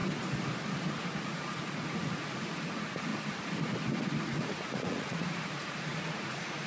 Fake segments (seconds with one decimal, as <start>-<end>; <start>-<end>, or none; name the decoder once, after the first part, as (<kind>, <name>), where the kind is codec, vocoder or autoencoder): 1.2-3.1 (vocoder, Vocos); 4.2-6.7